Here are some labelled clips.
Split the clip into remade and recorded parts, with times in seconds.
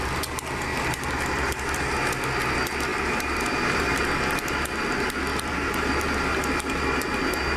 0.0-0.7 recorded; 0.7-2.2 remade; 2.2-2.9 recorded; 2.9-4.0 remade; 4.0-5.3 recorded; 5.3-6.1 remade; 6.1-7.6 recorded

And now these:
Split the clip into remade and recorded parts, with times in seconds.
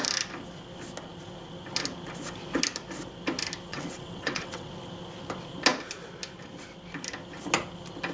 0.0-3.7 recorded; 3.7-4.7 remade; 4.7-8.1 recorded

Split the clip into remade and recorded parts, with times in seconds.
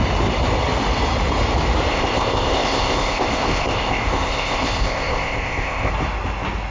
0.0-1.9 recorded; 1.9-5.9 remade; 5.9-6.7 recorded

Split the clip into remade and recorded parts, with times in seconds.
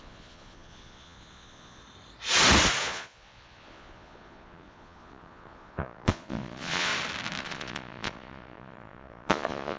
0.0-1.8 remade; 1.8-2.8 recorded; 2.8-6.9 remade; 6.9-7.4 recorded; 7.4-9.8 remade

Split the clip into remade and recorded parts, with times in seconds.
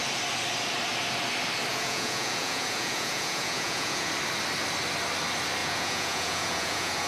0.0-1.7 recorded; 1.7-4.1 remade; 4.1-5.6 recorded; 5.6-7.1 remade